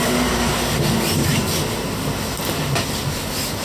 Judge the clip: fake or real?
real